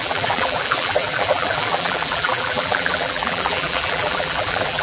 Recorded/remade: remade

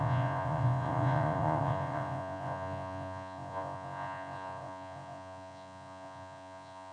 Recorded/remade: remade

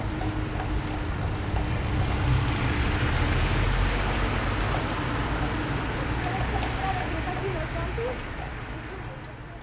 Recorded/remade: recorded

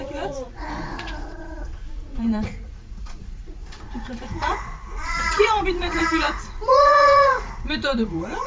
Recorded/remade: remade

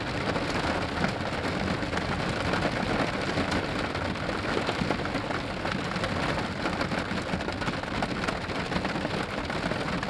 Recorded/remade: recorded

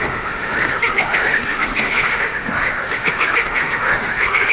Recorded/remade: remade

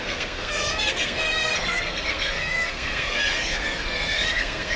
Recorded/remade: remade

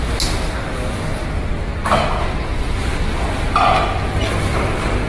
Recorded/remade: recorded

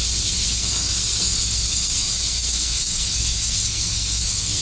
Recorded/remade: remade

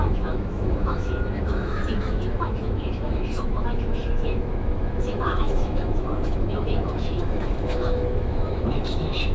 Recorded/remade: remade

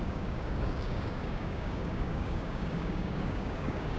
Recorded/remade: remade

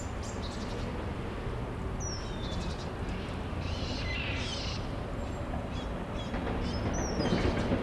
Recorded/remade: recorded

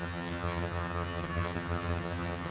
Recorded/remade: remade